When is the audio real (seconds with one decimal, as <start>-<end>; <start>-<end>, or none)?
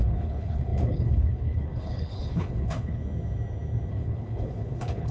3.0-3.9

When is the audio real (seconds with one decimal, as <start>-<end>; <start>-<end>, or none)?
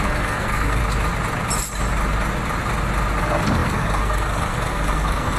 0.8-3.2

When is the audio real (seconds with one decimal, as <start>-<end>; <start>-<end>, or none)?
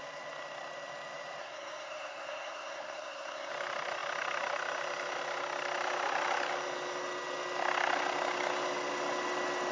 0.0-1.4; 3.5-9.7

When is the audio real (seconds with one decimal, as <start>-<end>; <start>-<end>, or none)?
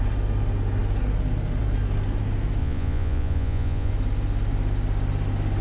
0.0-2.6; 3.9-5.6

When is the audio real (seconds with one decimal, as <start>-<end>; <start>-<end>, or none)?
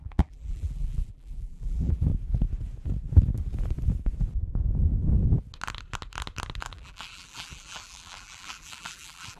2.1-6.6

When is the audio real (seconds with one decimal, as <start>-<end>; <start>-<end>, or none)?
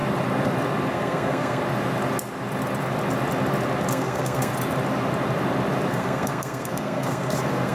0.0-0.9; 1.6-3.9; 4.5-5.9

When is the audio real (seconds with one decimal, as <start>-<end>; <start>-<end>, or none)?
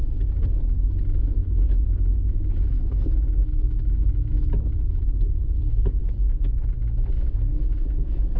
0.0-1.4; 5.5-8.4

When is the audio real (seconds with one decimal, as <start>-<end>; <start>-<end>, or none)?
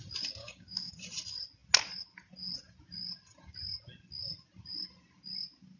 0.0-0.4; 0.9-5.8